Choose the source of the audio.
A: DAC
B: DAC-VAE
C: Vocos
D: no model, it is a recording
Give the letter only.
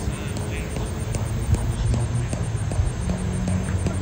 D